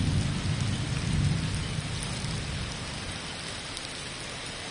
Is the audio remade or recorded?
recorded